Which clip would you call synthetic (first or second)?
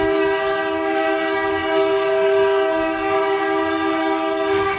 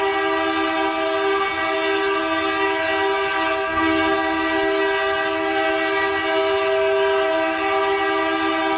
first